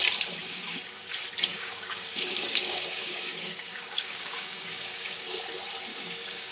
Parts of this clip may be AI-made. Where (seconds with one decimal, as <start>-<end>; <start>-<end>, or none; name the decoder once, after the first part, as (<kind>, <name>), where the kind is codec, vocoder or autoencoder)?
0.4-1.1 (codec, DAC); 1.5-5.4; 5.9-6.5